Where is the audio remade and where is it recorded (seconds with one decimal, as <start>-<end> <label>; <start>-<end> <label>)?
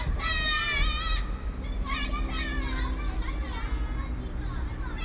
0.0-5.0 recorded